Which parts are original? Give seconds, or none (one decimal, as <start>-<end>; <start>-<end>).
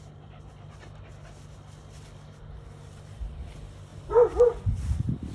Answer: 0.0-5.3